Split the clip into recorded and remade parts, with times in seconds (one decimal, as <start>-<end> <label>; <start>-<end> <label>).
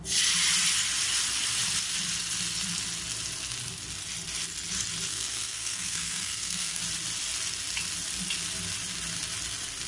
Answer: 0.0-5.1 recorded; 5.1-6.8 remade; 6.8-9.9 recorded